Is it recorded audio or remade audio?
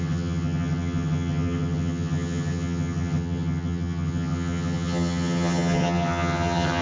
remade